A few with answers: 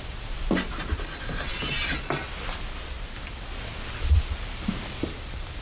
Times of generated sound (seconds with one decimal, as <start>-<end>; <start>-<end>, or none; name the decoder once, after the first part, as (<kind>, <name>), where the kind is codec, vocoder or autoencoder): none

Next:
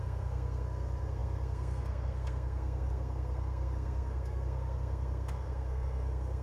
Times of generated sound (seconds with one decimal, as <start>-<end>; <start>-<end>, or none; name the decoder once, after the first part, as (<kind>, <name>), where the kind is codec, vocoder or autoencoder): 0.0-6.4 (codec, SNAC)

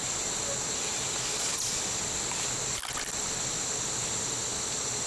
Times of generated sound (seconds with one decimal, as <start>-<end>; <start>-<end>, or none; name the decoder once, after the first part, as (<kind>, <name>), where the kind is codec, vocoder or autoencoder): none

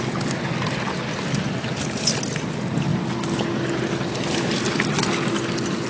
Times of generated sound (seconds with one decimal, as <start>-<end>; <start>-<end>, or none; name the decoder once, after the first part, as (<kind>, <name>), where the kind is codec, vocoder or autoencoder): none

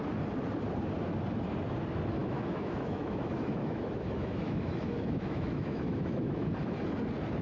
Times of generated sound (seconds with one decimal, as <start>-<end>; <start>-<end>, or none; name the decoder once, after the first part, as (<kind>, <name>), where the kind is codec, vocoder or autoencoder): 2.2-6.5 (autoencoder, DAC-VAE)

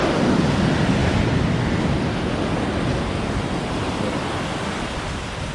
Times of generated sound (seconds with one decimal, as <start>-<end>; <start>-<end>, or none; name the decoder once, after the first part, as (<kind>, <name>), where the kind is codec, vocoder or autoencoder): none